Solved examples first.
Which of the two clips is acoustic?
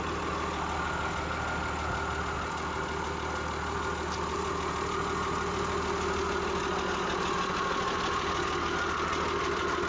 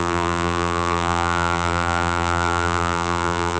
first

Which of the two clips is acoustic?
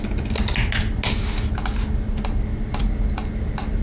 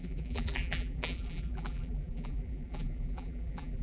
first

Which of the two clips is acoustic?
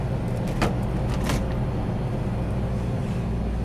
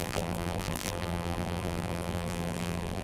first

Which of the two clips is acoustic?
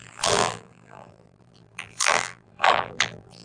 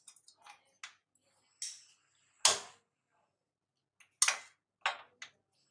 second